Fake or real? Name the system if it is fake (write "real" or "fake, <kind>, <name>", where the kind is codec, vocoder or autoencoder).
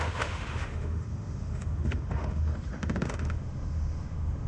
fake, autoencoder, DAC-VAE